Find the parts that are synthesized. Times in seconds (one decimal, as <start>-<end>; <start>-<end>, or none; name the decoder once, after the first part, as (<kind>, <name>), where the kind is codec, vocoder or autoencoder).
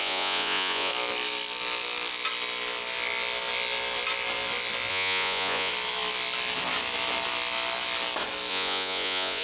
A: 0.0-0.9 (vocoder, Vocos); 4.9-5.7; 8.5-9.4